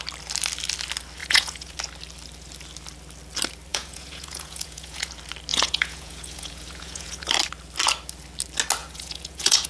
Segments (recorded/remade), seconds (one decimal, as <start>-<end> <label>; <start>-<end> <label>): 0.0-1.2 recorded; 1.2-1.8 remade; 1.8-3.7 recorded; 3.7-5.1 remade; 5.1-5.5 recorded; 5.5-7.3 remade; 7.3-8.8 recorded; 8.8-9.7 remade